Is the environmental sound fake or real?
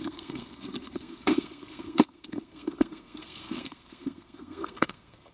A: fake